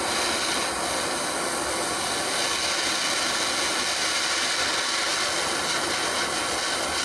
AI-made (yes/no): no